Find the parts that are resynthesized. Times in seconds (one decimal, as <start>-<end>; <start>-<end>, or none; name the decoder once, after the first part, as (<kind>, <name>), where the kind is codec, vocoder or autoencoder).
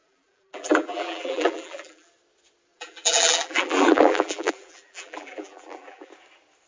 0.0-2.1 (vocoder, BigVGAN v2); 2.7-6.1